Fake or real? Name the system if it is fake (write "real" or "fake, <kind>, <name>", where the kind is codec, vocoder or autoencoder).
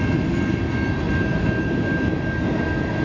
real